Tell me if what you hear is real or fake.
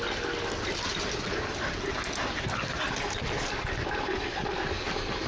real